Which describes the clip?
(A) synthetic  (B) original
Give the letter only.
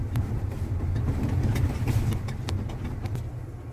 B